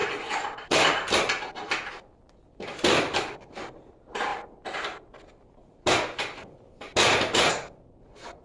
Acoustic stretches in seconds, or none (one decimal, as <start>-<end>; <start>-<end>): 0.0-8.4